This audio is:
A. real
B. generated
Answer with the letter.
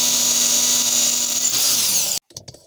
A